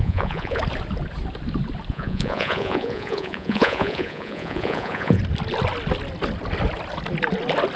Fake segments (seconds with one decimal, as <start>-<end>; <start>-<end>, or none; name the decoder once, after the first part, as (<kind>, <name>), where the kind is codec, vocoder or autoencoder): 0.0-0.6 (vocoder, Vocos); 1.9-5.2